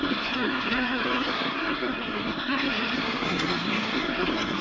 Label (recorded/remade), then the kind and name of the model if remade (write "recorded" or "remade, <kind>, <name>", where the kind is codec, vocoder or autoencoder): remade, codec, SNAC